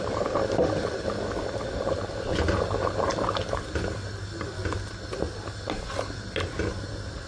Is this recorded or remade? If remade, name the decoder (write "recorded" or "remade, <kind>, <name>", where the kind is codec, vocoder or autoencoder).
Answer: recorded